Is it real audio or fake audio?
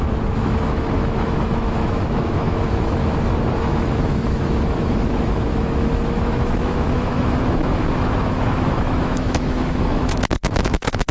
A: fake